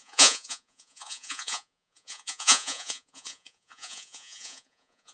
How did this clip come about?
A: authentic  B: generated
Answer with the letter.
B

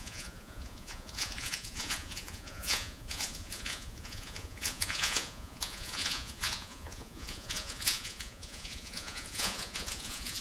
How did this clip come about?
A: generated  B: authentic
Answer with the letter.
A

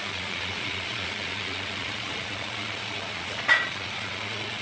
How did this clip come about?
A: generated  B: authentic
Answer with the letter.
A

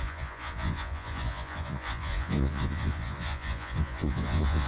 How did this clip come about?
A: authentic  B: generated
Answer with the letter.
B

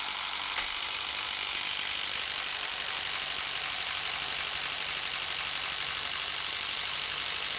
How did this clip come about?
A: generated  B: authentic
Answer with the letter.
B